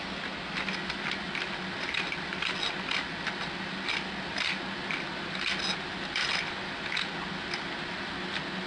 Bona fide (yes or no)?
yes